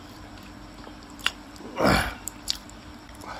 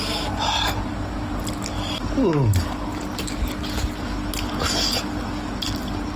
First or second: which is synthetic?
first